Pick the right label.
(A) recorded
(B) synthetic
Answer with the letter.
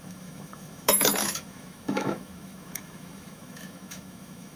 B